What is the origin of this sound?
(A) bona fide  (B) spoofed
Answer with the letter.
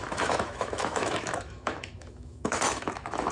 B